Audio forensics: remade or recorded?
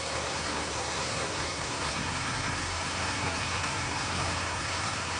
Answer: remade